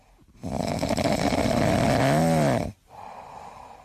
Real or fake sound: real